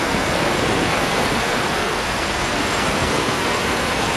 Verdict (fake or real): fake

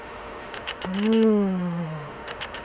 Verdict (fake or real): fake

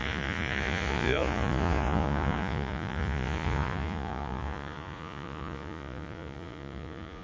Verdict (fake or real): fake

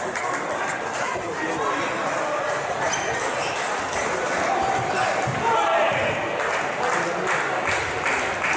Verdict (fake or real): real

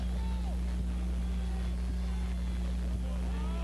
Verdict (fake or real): real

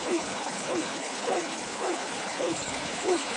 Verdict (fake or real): fake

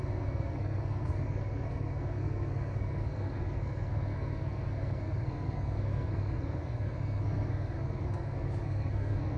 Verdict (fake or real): fake